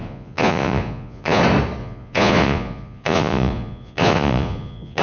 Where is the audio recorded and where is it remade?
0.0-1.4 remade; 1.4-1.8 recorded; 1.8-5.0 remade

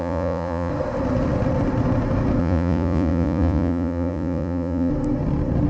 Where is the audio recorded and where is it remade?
0.0-0.7 remade; 0.7-2.4 recorded; 2.4-4.9 remade; 4.9-5.7 recorded

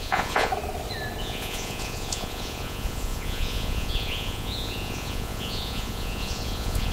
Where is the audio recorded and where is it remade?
0.0-0.5 remade; 0.5-1.2 recorded; 1.2-6.9 remade

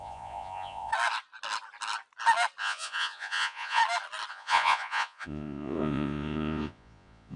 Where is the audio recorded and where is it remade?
0.0-0.9 remade; 0.9-2.6 recorded; 2.6-3.8 remade; 3.8-4.3 recorded; 4.3-7.4 remade

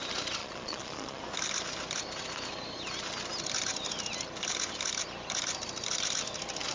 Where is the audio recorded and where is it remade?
0.0-0.4 recorded; 0.4-1.2 remade; 1.2-6.7 recorded

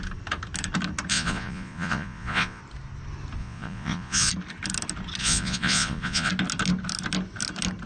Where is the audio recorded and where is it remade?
0.0-1.1 recorded; 1.1-2.6 remade; 2.6-3.4 recorded; 3.4-4.3 remade; 4.3-5.2 recorded; 5.2-6.3 remade; 6.3-7.9 recorded

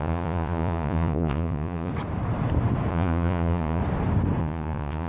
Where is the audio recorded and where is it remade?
0.0-1.9 remade; 1.9-2.9 recorded; 2.9-3.8 remade; 3.8-4.4 recorded; 4.4-5.1 remade